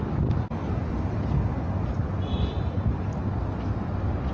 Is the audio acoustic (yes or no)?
yes